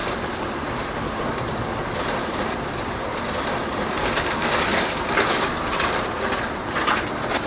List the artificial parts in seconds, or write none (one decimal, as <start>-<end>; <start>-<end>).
0.0-7.5